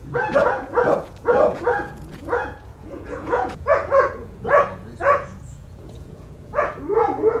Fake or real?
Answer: fake